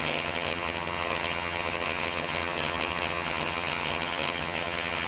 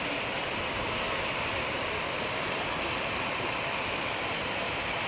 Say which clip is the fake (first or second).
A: first